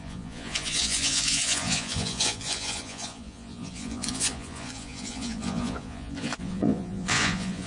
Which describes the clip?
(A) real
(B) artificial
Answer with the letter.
B